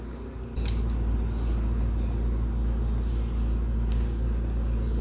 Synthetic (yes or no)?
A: no